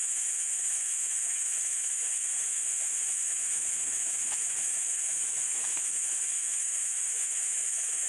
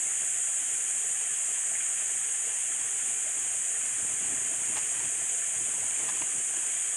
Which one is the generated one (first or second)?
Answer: first